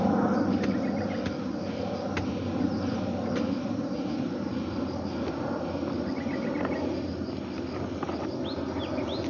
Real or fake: real